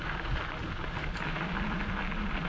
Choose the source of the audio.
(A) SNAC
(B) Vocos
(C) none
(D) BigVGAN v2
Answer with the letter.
C